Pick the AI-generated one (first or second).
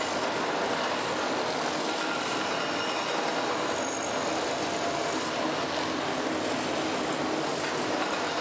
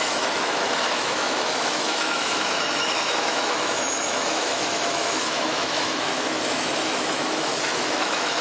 second